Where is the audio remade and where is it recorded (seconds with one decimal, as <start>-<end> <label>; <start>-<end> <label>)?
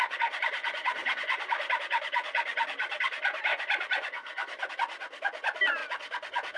0.0-0.6 recorded; 0.6-1.7 remade; 1.7-3.5 recorded; 3.5-4.7 remade; 4.7-6.6 recorded